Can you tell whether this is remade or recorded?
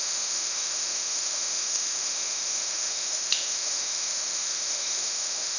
remade